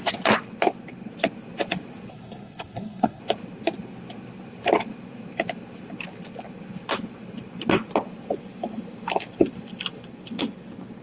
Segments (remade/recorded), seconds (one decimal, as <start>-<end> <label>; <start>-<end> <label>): 0.0-2.1 recorded; 2.1-3.2 remade; 3.2-11.0 recorded